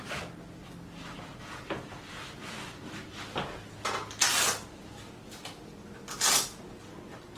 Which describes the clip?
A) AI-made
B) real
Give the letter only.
B